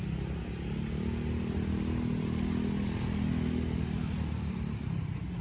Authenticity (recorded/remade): recorded